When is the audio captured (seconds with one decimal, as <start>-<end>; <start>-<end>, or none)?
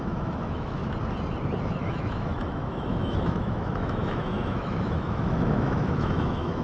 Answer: 0.8-1.8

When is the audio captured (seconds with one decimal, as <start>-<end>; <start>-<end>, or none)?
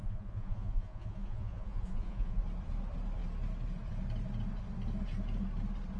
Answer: 2.4-6.0